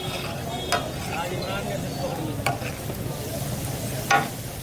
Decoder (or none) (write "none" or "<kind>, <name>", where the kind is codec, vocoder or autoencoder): none